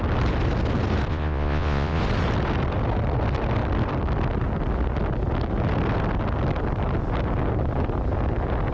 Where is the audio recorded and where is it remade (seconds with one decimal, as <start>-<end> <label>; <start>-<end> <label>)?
0.0-1.1 recorded; 1.1-2.0 remade; 2.0-8.7 recorded